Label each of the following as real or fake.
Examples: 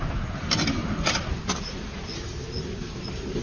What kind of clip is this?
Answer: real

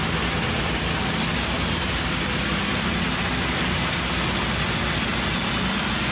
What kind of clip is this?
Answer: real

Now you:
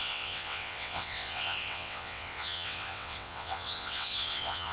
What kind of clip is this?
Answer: fake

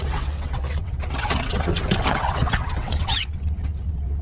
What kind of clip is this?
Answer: fake